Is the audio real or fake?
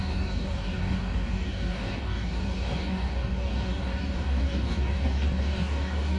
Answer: fake